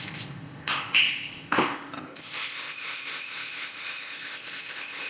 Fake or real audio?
fake